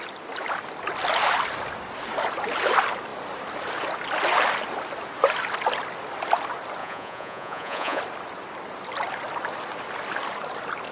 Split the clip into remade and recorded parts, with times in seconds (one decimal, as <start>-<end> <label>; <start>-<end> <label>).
0.0-6.8 recorded; 6.8-8.0 remade; 8.0-10.9 recorded